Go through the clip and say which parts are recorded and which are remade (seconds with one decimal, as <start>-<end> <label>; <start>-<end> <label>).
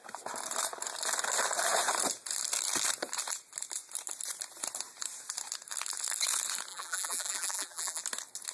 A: 0.0-6.7 recorded; 6.7-8.0 remade; 8.0-8.5 recorded